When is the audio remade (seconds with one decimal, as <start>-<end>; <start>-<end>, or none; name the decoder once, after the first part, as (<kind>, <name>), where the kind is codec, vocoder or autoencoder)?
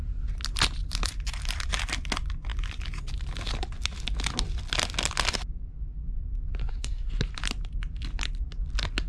6.6-7.1 (codec, SNAC)